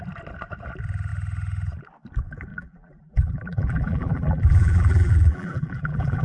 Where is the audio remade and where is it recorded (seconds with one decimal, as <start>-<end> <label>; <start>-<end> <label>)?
0.0-2.5 recorded; 2.5-6.2 remade